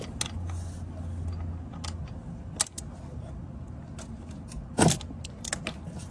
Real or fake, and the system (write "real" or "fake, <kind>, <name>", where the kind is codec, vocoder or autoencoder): real